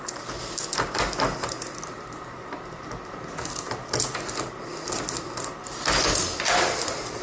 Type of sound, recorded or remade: recorded